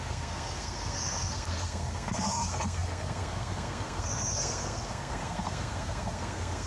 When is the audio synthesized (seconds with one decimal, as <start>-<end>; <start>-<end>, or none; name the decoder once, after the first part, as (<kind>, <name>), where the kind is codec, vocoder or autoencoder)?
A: 0.0-6.7 (codec, SNAC)